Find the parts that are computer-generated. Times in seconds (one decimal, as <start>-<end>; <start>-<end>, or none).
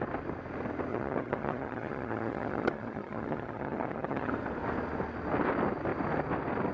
0.9-4.3